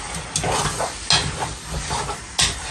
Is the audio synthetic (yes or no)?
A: no